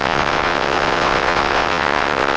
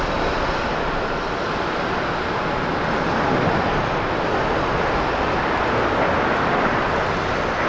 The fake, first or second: first